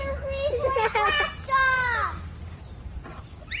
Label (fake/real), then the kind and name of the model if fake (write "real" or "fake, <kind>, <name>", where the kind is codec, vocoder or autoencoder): real